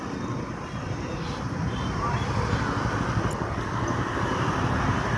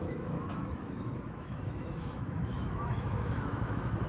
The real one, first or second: first